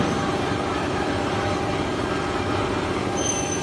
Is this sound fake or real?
real